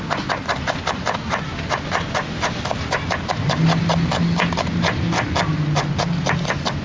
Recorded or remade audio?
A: recorded